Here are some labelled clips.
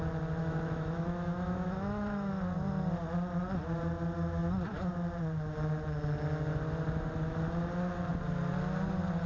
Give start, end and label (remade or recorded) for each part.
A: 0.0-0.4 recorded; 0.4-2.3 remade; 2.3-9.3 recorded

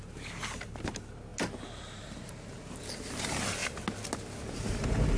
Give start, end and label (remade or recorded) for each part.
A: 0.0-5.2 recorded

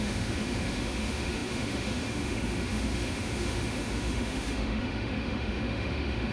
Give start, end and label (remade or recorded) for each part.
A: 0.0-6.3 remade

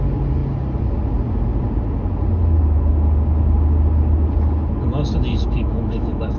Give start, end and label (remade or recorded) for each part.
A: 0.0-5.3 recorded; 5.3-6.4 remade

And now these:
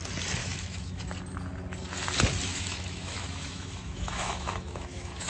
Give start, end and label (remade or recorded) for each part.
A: 0.0-0.4 recorded; 0.4-1.0 remade; 1.0-2.5 recorded; 2.5-5.3 remade

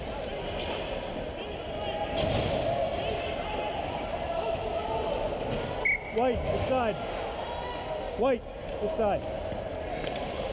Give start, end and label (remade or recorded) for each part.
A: 0.0-10.5 recorded

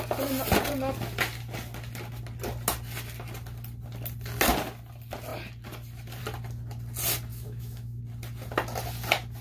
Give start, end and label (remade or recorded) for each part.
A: 0.0-7.3 recorded; 7.3-8.0 remade; 8.0-9.4 recorded